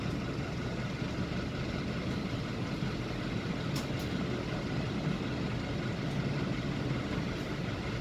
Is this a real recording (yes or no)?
yes